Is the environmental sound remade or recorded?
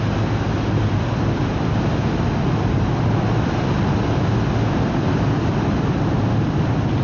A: recorded